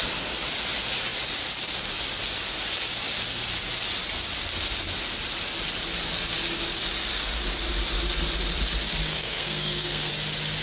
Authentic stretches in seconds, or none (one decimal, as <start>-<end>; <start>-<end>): 0.0-9.1; 10.1-10.6